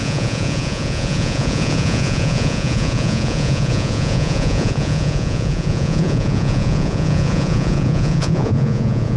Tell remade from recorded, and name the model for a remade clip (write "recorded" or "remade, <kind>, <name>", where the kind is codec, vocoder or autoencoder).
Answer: remade, vocoder, Vocos